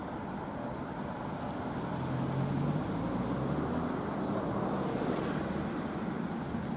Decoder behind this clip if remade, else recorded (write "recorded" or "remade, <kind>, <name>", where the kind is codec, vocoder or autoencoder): recorded